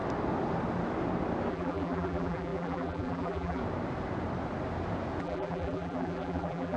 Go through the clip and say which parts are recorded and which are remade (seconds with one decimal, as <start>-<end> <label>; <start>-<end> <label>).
0.0-1.5 recorded; 1.5-3.6 remade; 3.6-5.2 recorded; 5.2-6.8 remade